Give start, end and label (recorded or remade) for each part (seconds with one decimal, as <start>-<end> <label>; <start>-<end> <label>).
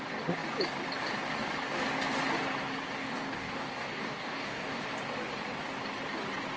0.0-3.0 recorded; 3.0-4.8 remade; 4.8-6.6 recorded